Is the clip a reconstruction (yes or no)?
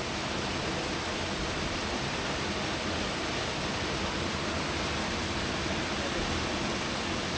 no